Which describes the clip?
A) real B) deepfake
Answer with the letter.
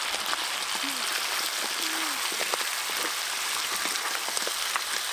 A